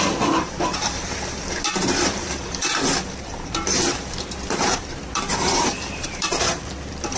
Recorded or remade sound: remade